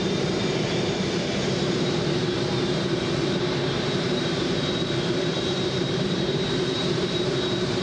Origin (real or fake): fake